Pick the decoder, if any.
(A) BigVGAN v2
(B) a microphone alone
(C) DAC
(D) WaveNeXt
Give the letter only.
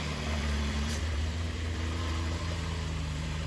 A